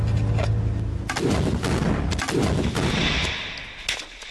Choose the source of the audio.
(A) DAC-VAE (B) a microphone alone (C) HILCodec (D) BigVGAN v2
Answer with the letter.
B